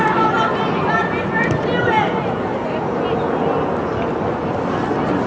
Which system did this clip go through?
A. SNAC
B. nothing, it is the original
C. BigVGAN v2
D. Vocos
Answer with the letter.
B